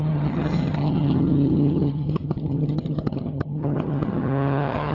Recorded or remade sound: remade